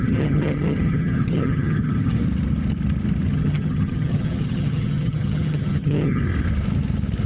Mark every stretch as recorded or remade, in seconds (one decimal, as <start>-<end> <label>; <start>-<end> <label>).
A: 0.0-2.2 remade; 2.2-3.3 recorded; 3.3-6.2 remade; 6.2-7.3 recorded

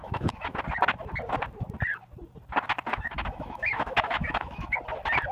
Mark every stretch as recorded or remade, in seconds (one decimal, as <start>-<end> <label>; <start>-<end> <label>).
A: 0.0-0.6 remade; 0.6-2.9 recorded; 2.9-4.8 remade; 4.8-5.3 recorded

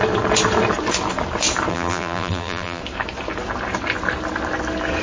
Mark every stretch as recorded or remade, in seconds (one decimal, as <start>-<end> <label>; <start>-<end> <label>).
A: 0.0-1.7 recorded; 1.7-2.8 remade; 2.8-5.0 recorded

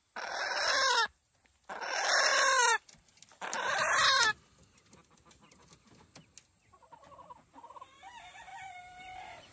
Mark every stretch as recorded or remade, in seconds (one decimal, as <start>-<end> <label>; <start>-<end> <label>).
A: 0.0-2.3 recorded; 2.3-4.2 remade; 4.2-8.5 recorded; 8.5-9.5 remade